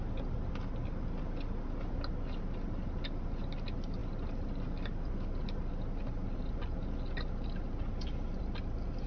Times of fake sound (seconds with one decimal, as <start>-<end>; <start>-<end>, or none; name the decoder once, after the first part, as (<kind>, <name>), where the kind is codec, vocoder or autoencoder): none